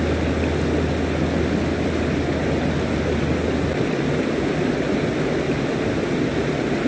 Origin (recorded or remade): recorded